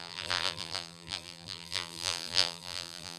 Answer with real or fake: fake